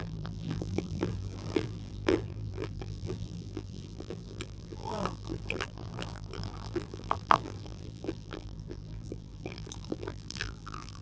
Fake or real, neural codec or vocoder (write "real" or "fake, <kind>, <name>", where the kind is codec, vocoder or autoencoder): fake, vocoder, BigVGAN v2